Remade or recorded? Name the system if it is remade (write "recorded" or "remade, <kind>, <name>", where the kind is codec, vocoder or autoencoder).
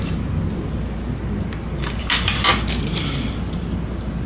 recorded